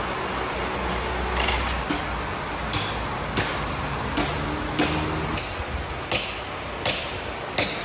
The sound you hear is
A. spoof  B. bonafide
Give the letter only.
B